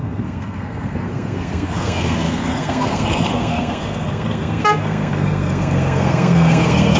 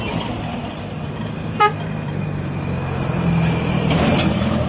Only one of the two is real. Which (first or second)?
second